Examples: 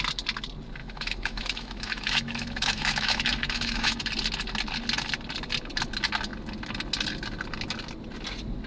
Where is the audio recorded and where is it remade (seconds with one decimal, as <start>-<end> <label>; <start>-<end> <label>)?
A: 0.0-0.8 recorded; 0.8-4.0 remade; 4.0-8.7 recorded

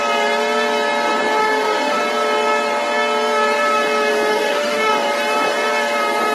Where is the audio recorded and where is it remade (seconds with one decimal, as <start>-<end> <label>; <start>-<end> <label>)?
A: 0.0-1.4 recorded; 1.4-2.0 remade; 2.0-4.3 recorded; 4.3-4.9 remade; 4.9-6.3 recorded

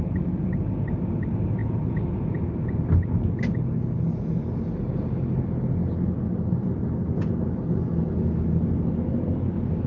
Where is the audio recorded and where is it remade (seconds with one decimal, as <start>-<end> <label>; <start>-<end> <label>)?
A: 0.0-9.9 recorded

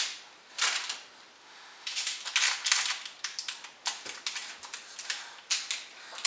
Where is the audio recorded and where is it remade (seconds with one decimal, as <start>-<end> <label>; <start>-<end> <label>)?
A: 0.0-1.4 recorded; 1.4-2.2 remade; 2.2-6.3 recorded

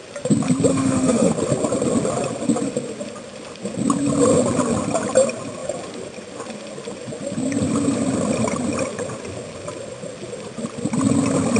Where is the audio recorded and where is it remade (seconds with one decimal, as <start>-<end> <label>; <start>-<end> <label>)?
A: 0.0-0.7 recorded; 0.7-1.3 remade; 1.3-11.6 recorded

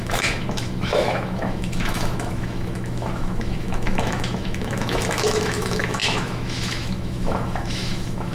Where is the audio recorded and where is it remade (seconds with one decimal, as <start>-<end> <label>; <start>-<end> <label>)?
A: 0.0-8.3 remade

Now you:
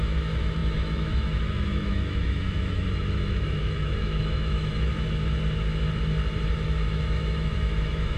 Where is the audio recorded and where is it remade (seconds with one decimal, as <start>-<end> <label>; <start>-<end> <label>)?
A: 0.0-4.9 remade; 4.9-6.5 recorded; 6.5-8.2 remade

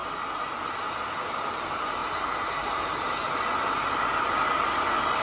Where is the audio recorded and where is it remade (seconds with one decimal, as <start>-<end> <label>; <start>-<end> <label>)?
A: 0.0-5.2 recorded